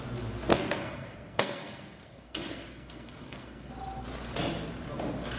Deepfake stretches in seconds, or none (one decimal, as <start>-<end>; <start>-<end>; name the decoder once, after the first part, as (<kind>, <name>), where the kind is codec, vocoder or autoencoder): 0.5-3.7 (codec, SNAC)